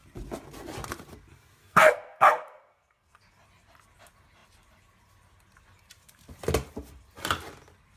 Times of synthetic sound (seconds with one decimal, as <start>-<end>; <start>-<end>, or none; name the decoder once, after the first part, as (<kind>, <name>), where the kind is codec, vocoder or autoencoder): 1.6-3.2 (codec, SNAC)